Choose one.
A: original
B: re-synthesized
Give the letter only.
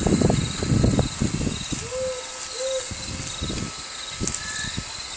A